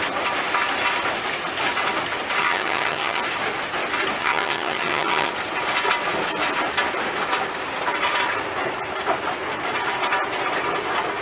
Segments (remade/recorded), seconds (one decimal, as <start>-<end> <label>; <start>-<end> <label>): 0.0-2.4 recorded; 2.4-3.2 remade; 3.2-4.2 recorded; 4.2-5.3 remade; 5.3-11.2 recorded